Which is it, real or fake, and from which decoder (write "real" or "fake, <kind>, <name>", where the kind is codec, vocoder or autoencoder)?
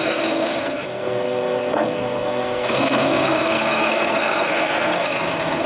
fake, codec, SNAC